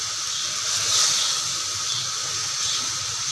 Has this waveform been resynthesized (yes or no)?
no